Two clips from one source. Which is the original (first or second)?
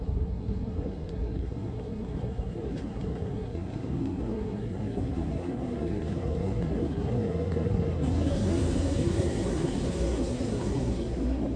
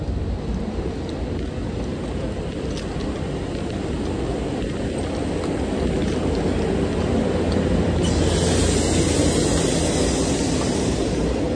second